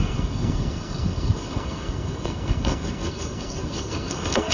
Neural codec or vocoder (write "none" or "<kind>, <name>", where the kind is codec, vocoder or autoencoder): codec, SNAC